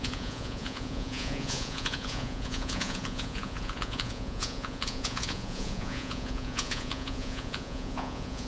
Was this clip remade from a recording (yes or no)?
yes